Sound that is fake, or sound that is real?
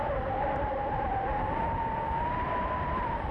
real